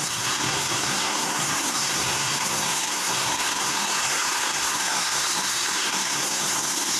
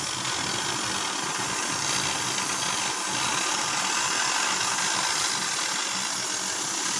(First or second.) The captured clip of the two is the second